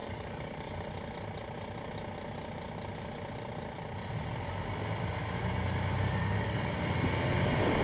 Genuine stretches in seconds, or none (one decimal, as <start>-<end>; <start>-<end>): 0.9-6.2; 6.7-7.8